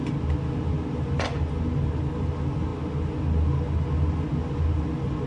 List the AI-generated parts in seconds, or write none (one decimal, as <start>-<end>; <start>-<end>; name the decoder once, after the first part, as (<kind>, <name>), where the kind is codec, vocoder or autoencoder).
none